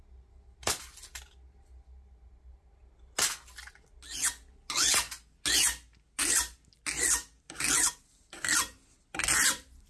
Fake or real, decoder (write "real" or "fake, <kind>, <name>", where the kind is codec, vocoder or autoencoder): real